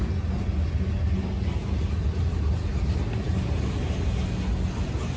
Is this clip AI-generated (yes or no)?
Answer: no